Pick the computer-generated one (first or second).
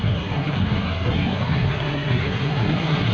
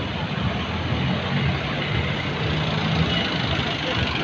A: first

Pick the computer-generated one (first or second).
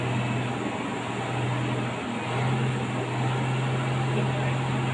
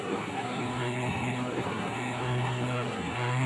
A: second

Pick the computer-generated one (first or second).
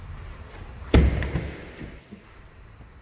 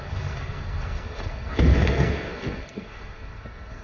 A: second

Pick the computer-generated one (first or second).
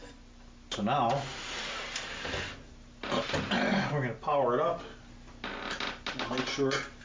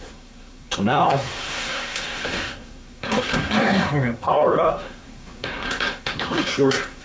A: second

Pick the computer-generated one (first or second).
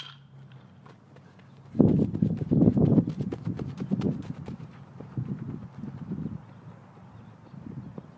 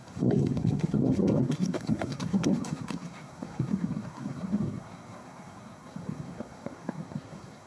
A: second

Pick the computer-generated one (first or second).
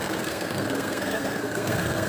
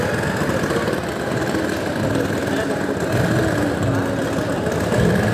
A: first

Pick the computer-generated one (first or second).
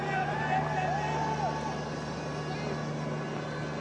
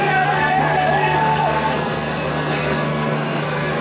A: second